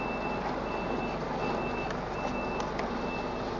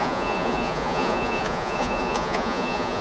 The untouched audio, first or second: first